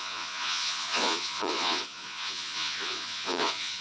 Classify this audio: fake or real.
fake